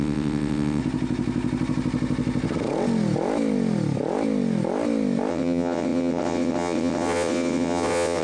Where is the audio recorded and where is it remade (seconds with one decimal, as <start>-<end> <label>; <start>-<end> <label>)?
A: 0.0-0.8 remade; 0.8-5.3 recorded; 5.3-8.2 remade